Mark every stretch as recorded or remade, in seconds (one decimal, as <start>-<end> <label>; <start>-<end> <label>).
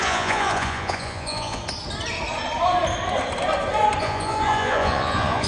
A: 0.0-1.6 remade; 1.6-4.0 recorded; 4.0-5.5 remade